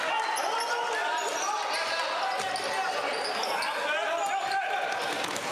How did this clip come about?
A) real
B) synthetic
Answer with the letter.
A